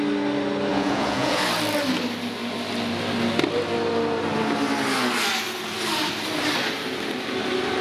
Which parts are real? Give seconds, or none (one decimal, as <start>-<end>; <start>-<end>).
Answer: 0.0-0.7; 1.4-7.8